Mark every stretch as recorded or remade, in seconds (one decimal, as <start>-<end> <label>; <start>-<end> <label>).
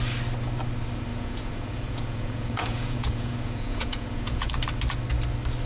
0.0-1.1 recorded; 1.1-4.5 remade; 4.5-5.7 recorded